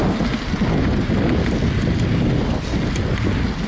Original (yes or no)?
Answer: yes